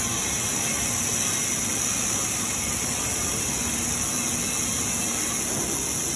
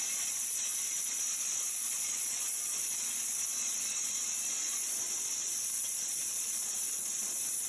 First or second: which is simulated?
second